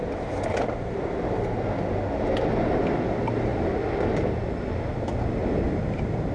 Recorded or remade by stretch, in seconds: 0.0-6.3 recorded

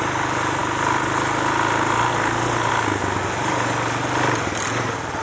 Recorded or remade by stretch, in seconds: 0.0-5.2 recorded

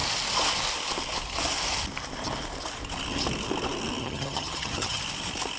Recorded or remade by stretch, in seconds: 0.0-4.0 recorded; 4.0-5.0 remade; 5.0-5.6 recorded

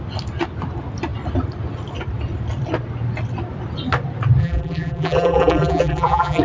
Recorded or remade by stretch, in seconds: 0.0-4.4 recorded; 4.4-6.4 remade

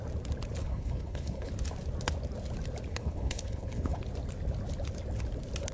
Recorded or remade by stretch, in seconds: 0.0-0.6 recorded; 0.6-1.5 remade; 1.5-2.9 recorded; 2.9-4.0 remade; 4.0-5.7 recorded